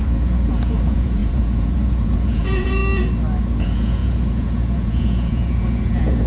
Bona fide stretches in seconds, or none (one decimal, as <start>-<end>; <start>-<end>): 2.8-3.4